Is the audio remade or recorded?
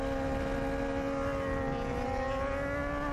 recorded